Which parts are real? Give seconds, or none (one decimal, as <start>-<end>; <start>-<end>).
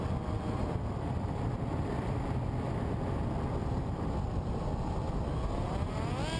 0.0-0.6; 2.3-3.6; 6.0-6.4